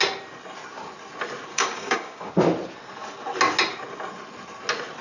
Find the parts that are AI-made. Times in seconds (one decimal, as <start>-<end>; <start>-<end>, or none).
1.5-2.3